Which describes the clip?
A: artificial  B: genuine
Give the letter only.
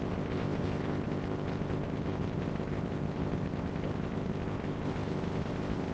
A